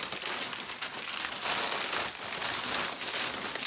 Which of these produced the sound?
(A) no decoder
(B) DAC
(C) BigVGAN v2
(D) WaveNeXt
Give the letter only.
A